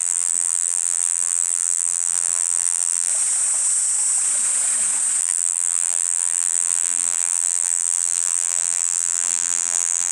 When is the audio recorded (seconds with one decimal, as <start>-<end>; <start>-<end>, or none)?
3.1-5.2